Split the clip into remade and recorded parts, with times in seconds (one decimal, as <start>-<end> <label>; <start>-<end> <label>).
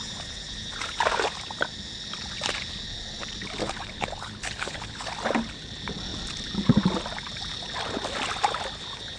0.0-3.6 recorded; 3.6-5.1 remade; 5.1-9.2 recorded